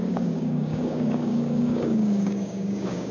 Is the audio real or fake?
fake